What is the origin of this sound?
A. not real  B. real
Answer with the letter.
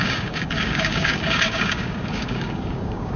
A